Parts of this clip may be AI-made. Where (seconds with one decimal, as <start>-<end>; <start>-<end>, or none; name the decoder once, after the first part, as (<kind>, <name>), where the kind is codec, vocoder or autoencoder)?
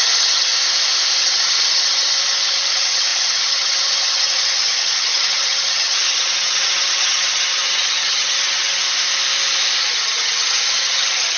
0.0-0.5 (vocoder, HiFi-GAN); 1.2-8.8; 9.8-11.4